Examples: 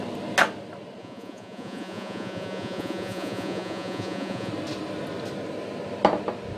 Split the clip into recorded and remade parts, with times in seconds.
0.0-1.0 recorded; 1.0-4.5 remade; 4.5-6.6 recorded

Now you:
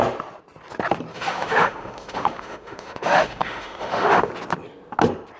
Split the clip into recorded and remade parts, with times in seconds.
0.0-1.1 recorded; 1.1-4.3 remade; 4.3-5.4 recorded

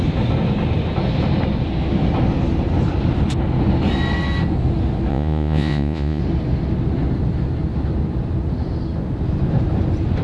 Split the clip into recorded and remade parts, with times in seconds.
0.0-5.1 recorded; 5.1-6.2 remade; 6.2-10.2 recorded

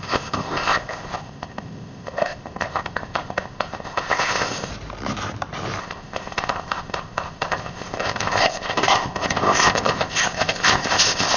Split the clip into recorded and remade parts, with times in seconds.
0.0-4.7 remade; 4.7-5.8 recorded; 5.8-11.4 remade